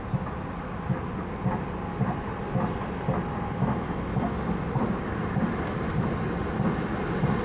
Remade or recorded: recorded